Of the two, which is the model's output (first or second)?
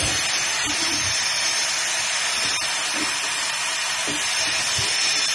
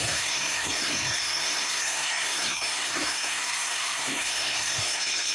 second